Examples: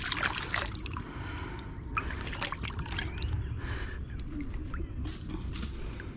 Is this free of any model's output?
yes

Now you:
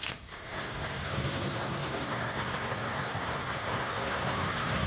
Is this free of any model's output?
no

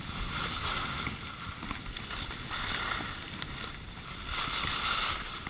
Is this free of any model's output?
yes